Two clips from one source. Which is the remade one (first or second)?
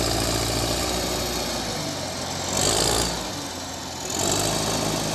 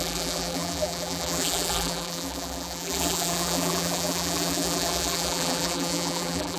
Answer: second